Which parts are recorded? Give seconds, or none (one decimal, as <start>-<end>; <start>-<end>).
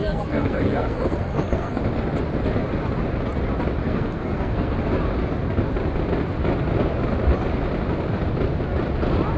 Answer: 1.8-3.8; 4.8-9.4